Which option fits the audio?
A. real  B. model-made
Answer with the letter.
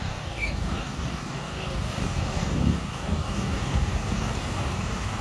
B